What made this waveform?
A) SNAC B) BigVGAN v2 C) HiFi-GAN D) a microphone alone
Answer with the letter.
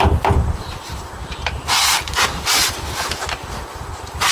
B